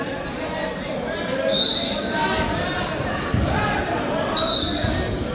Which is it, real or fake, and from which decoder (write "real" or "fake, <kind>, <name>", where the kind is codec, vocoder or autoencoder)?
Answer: real